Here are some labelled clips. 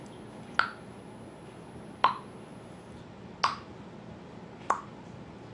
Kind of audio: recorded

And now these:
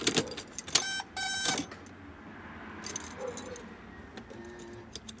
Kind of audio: recorded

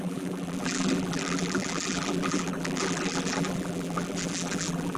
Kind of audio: remade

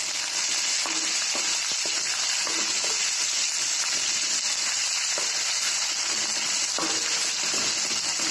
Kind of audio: recorded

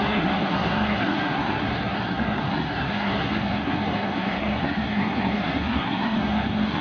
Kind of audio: remade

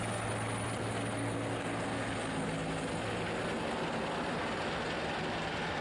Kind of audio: recorded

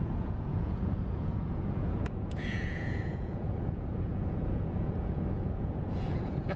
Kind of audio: remade